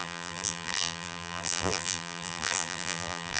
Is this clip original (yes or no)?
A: no